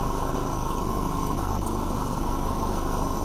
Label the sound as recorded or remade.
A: remade